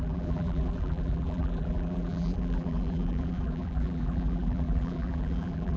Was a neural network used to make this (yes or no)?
yes